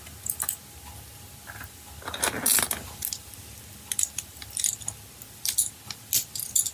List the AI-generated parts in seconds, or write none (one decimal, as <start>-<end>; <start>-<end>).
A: none